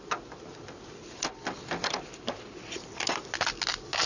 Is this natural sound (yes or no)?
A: yes